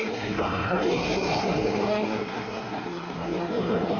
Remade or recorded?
remade